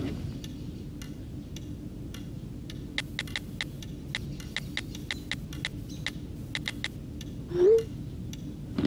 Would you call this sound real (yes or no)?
yes